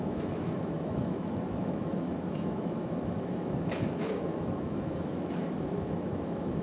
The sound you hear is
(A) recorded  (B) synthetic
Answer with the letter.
B